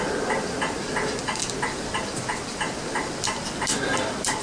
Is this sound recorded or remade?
recorded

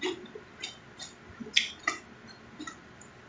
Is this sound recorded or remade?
recorded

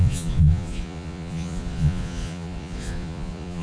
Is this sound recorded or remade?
remade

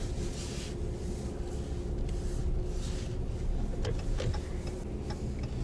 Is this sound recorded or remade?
recorded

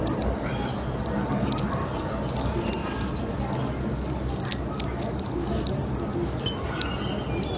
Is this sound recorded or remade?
recorded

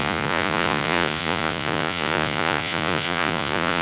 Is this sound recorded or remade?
remade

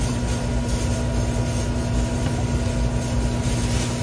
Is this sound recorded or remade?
recorded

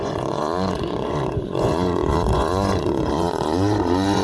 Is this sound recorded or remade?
remade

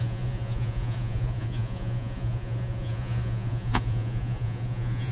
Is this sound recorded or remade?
remade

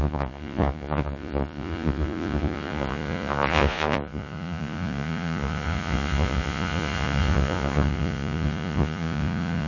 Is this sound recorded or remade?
remade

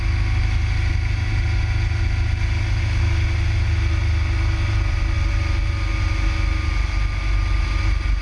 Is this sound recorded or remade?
recorded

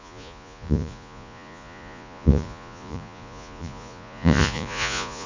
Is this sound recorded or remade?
remade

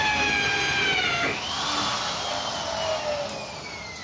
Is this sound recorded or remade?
recorded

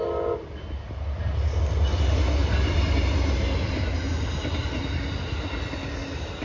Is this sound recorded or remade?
recorded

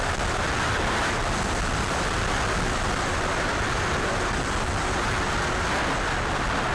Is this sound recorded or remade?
recorded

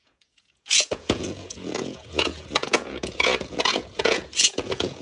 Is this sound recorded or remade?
remade